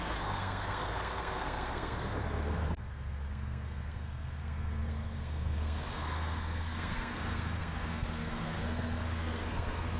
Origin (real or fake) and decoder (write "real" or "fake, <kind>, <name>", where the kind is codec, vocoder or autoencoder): fake, codec, SNAC